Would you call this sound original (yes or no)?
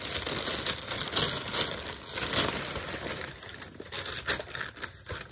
yes